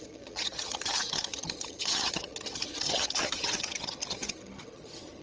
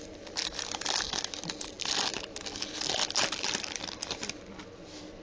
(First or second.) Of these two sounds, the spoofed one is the first